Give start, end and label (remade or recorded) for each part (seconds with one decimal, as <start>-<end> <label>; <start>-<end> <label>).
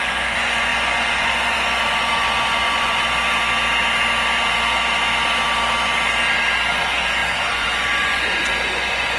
0.0-3.0 remade; 3.0-6.7 recorded; 6.7-9.2 remade